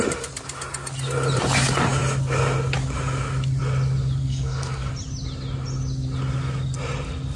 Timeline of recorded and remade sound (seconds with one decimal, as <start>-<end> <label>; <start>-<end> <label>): 0.0-4.2 recorded; 4.2-4.9 remade; 4.9-7.4 recorded